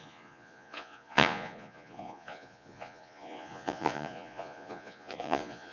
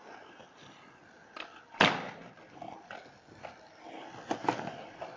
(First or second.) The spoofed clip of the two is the first